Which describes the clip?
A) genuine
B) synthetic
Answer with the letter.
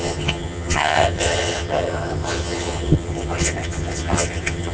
B